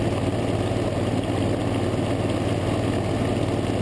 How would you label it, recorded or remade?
recorded